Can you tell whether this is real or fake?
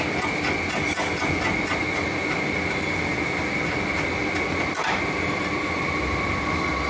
real